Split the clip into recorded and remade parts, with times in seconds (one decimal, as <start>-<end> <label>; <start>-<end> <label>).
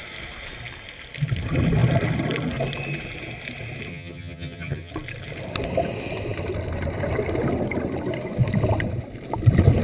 0.0-3.9 recorded; 3.9-4.9 remade; 4.9-9.8 recorded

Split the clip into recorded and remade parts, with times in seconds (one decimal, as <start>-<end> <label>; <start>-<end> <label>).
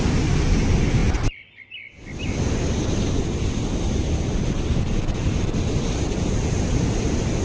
0.0-7.4 recorded